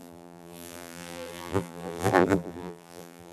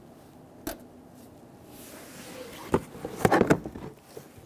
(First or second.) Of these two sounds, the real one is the second